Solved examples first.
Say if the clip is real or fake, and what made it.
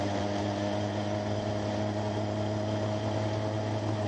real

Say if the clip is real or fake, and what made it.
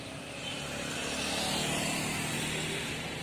real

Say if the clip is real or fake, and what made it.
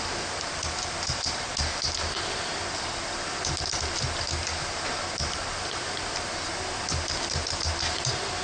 real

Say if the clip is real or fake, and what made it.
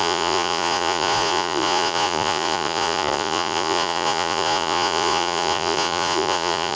fake, vocoder, Vocos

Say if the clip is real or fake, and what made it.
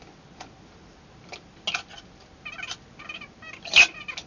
real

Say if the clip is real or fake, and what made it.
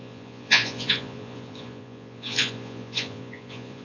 fake, vocoder, Vocos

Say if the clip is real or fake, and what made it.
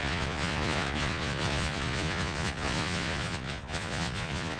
fake, vocoder, Vocos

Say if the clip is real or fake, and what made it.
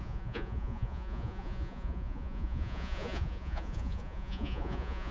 fake, vocoder, Vocos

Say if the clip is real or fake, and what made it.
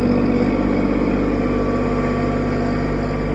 real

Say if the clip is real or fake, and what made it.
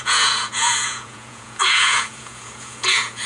fake, vocoder, Vocos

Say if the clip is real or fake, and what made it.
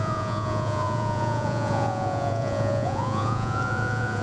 fake, vocoder, Vocos